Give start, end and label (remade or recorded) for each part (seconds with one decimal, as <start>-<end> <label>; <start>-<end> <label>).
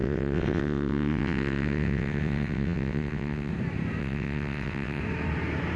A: 0.0-3.5 remade; 3.5-4.0 recorded; 4.0-5.0 remade; 5.0-5.8 recorded